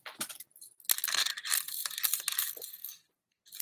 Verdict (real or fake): real